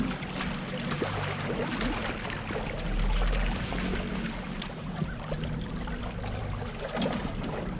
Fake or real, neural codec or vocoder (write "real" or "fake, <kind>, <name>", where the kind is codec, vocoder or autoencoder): real